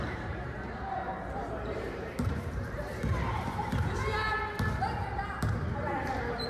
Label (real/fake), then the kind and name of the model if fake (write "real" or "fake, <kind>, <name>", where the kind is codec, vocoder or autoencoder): fake, vocoder, BigVGAN v2